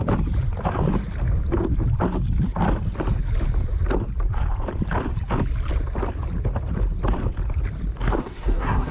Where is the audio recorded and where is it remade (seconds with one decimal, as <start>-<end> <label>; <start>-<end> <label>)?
0.0-8.2 recorded; 8.2-8.9 remade